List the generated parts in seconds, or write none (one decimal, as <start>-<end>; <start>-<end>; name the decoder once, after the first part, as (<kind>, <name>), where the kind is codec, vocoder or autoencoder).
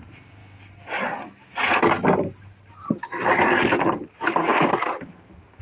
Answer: 0.0-0.4 (vocoder, BigVGAN v2); 3.8-5.6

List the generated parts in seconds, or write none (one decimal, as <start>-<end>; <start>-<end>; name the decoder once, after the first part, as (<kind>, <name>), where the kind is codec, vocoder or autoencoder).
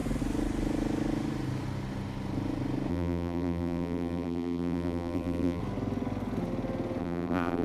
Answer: 2.9-5.6 (vocoder, BigVGAN v2); 7.0-7.6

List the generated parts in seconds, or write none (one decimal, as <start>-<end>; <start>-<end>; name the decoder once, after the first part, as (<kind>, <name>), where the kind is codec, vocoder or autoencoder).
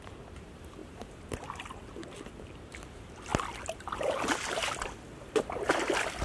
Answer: none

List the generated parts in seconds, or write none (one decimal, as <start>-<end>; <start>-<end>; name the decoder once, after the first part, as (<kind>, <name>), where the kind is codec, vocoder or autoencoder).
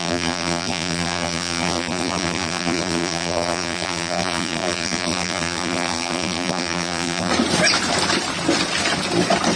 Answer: 0.0-7.3 (vocoder, BigVGAN v2)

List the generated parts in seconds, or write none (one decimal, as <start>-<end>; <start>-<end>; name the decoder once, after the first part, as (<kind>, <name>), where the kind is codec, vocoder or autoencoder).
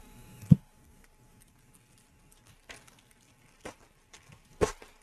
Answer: none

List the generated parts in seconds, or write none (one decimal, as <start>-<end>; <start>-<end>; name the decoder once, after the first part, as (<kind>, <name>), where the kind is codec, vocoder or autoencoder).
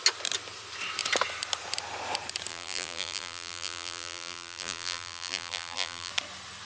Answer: 2.5-6.1 (vocoder, BigVGAN v2)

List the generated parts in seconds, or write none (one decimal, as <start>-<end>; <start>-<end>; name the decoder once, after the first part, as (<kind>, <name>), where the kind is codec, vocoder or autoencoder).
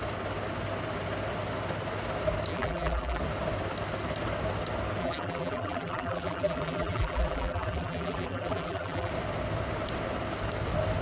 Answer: 2.5-3.2 (vocoder, BigVGAN v2); 5.0-9.1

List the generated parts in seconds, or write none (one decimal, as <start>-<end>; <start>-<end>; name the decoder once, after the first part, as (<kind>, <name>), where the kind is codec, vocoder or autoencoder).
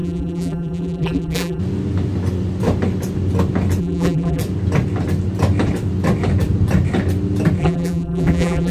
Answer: 0.0-1.6 (vocoder, BigVGAN v2); 3.8-4.4; 7.6-8.7